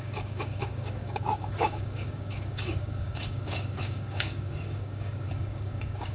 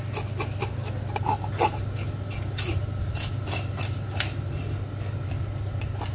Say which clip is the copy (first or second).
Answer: first